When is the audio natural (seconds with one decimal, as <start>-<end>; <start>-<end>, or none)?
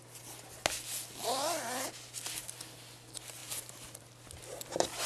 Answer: 0.0-5.1